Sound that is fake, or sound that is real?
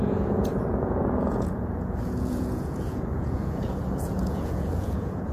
fake